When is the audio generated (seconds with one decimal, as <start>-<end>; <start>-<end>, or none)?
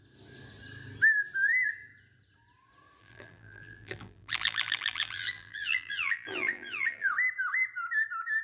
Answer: 3.0-7.1